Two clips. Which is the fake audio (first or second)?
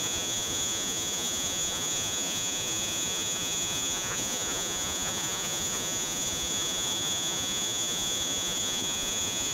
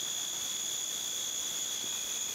first